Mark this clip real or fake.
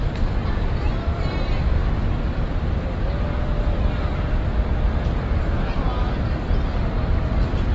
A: fake